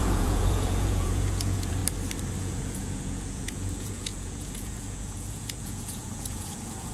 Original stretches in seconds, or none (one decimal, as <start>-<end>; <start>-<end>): 1.8-2.4